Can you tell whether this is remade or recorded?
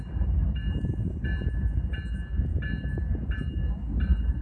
recorded